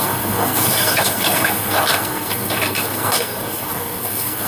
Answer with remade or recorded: remade